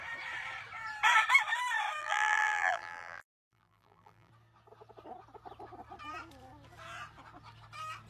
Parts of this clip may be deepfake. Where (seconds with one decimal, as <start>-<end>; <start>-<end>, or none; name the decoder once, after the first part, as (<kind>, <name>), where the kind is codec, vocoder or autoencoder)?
2.0-4.3 (vocoder, BigVGAN v2)